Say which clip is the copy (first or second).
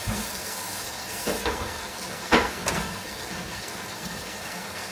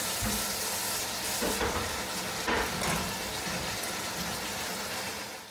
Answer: first